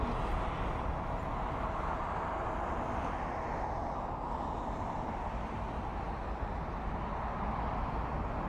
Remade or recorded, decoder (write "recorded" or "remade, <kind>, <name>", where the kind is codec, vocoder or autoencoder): recorded